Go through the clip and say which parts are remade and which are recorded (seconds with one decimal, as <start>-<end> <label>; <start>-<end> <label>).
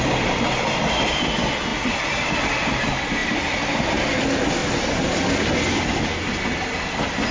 0.0-1.7 recorded; 1.7-2.4 remade; 2.4-3.2 recorded; 3.2-3.9 remade; 3.9-4.6 recorded; 4.6-6.0 remade; 6.0-7.3 recorded